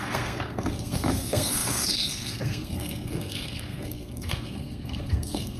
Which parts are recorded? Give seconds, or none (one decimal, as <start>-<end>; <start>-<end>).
none